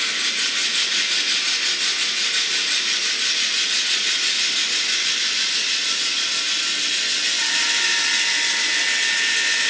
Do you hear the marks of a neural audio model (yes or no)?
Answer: no